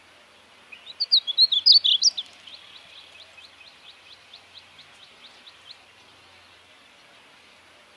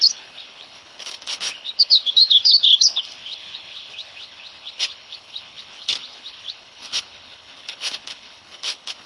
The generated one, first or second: second